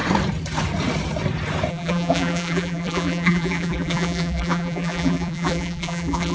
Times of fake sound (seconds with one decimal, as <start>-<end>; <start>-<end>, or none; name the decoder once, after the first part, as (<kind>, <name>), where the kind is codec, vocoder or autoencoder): 1.7-6.3 (vocoder, BigVGAN v2)